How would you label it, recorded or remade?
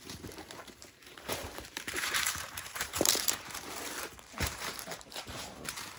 remade